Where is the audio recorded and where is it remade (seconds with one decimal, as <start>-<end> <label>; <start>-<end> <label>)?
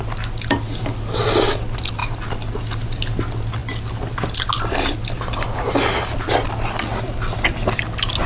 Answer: 0.0-8.3 recorded